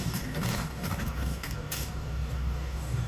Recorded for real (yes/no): no